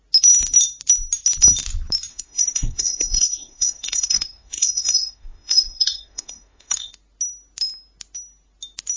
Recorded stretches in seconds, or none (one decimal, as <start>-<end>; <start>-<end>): 0.0-2.1; 6.9-9.0